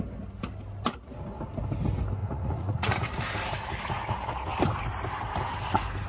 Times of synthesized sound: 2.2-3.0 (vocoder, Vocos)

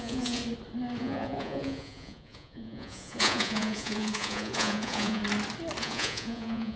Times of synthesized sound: 0.0-0.4 (vocoder, Vocos); 1.0-5.2; 5.8-6.8